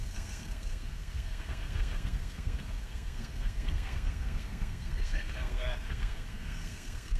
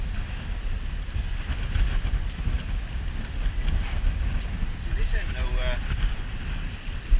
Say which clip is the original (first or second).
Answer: second